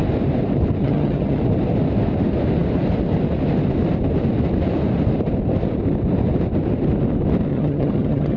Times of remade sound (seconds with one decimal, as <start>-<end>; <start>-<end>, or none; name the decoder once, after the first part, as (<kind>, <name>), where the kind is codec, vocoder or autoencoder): 0.8-1.4 (vocoder, HiFi-GAN); 7.5-8.4

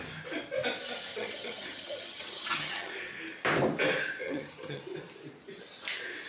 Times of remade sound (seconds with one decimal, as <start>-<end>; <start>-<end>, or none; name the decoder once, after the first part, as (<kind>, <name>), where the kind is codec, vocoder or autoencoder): 1.1-2.9 (vocoder, HiFi-GAN); 4.2-4.8